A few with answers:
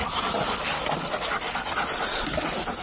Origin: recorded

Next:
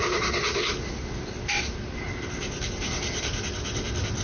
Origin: recorded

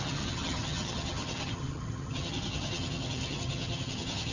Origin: remade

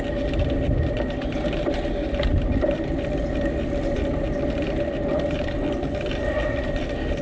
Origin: recorded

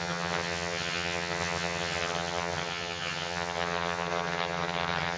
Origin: remade